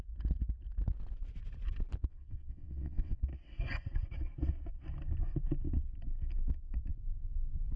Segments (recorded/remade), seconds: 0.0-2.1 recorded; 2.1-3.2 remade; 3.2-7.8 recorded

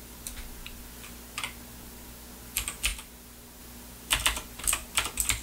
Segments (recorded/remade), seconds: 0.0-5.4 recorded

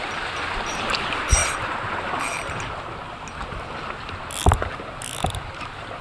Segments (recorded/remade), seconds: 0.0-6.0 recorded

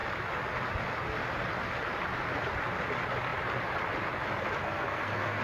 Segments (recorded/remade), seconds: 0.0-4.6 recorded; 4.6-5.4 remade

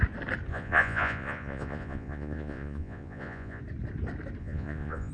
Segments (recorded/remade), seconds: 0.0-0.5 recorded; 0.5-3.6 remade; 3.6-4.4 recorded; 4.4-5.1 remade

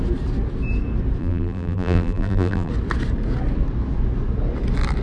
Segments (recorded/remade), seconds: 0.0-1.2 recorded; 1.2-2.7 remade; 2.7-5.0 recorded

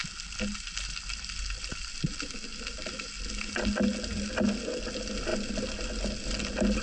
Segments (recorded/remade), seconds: 0.0-6.8 recorded